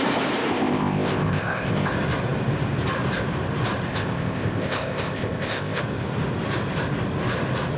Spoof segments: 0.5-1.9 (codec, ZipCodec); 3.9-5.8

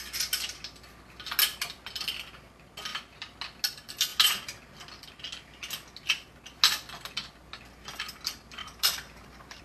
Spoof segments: 2.9-3.4 (vocoder, BigVGAN v2); 8.6-9.6

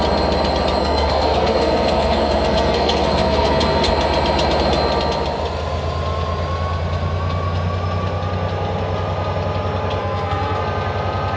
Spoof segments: 0.8-3.9 (codec, SNAC); 10.0-10.6

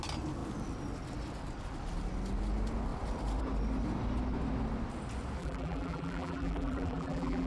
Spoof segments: 5.4-7.5 (vocoder, BigVGAN v2)